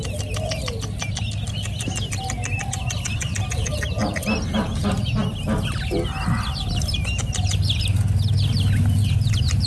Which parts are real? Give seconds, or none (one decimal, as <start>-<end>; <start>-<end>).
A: 0.0-9.7